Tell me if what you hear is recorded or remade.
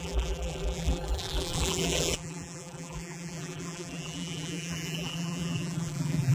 remade